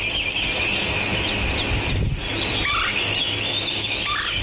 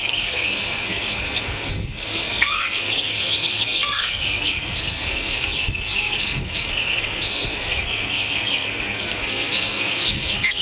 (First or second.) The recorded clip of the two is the first